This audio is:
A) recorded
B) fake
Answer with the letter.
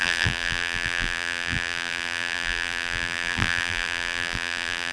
B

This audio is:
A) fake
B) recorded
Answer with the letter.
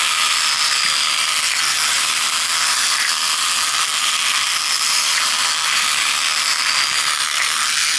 A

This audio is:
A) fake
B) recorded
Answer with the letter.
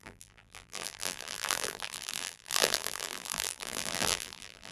A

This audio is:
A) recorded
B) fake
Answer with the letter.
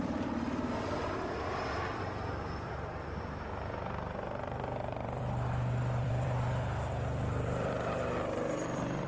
B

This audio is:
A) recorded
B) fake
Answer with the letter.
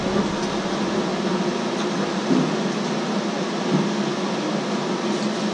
A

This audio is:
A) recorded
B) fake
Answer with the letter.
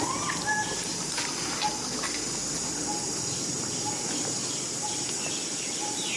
A